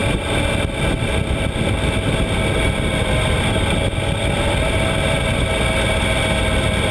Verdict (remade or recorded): recorded